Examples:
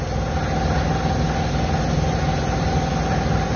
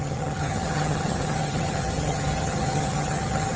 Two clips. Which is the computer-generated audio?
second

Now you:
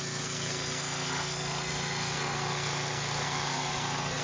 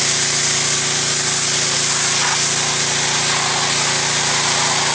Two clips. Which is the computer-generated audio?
first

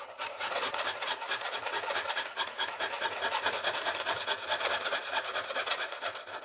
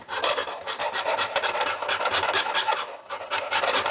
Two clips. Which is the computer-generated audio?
first